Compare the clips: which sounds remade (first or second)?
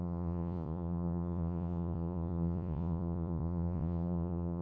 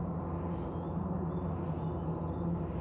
first